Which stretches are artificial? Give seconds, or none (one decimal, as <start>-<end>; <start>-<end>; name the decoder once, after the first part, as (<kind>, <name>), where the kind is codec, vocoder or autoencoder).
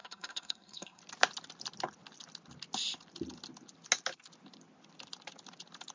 0.0-1.0 (codec, SNAC)